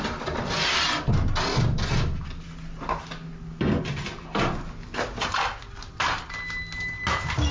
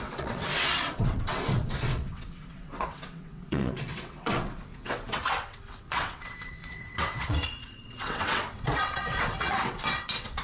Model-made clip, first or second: second